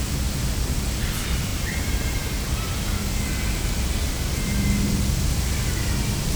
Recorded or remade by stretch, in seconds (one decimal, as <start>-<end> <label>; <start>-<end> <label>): 0.0-6.4 recorded